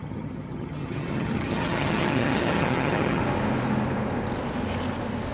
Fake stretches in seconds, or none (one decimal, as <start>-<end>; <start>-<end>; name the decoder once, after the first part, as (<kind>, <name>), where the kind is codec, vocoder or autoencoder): 0.0-3.2 (vocoder, HiFi-GAN)